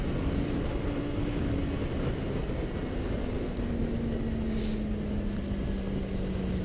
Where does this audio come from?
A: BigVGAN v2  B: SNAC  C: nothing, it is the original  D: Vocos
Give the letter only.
C